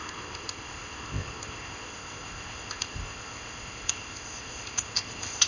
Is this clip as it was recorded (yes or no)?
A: no